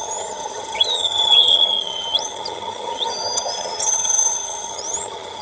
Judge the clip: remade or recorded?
remade